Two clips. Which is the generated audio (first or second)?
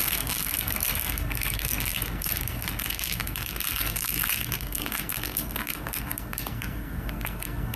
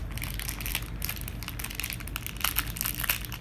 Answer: first